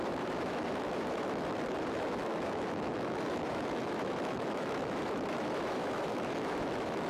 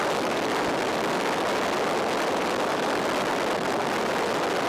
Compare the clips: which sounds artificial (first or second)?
first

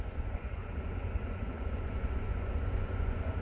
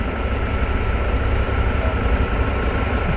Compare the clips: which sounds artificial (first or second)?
first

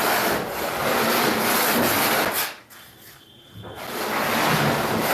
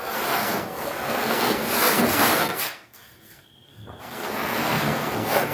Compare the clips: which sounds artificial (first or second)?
second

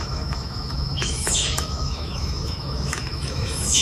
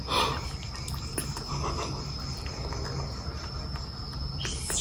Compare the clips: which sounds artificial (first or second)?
first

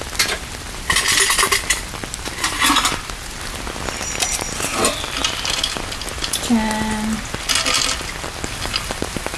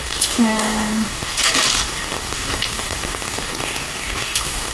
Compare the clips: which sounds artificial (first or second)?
second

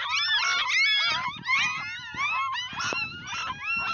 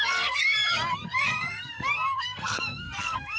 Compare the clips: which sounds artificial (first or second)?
second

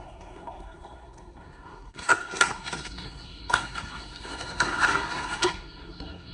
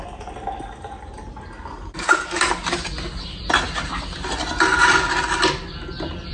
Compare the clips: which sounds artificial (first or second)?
first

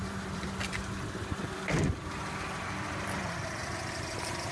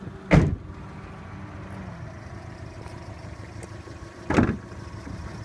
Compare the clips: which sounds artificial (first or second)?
first